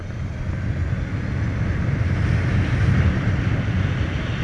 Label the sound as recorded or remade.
recorded